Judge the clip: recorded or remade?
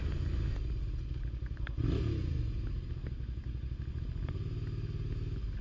recorded